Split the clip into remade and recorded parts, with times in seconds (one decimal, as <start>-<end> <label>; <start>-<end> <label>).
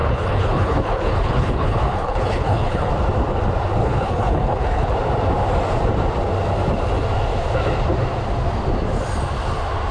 0.0-2.9 remade; 2.9-3.8 recorded; 3.8-4.9 remade; 4.9-9.9 recorded